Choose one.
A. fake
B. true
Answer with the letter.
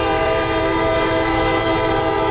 A